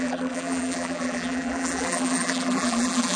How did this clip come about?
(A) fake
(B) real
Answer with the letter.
A